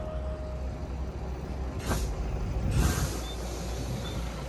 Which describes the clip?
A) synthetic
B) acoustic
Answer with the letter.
B